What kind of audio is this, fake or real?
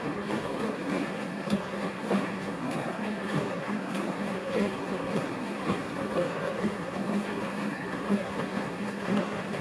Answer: fake